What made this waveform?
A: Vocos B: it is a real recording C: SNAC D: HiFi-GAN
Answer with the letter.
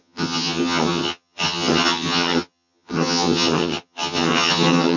D